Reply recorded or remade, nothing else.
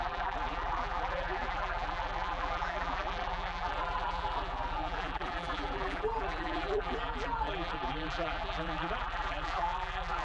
remade